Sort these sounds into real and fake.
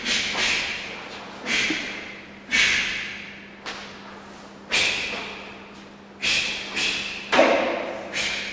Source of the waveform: real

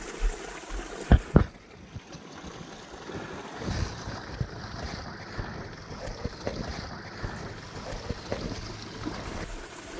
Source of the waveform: real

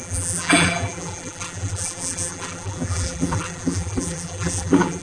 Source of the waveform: fake